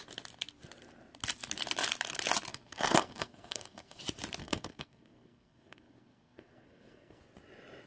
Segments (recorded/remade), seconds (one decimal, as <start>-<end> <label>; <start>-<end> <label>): 0.0-2.5 recorded; 2.5-4.0 remade; 4.0-4.4 recorded; 4.4-7.2 remade; 7.2-7.9 recorded